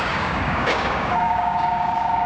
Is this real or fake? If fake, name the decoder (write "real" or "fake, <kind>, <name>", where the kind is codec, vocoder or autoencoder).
fake, codec, DAC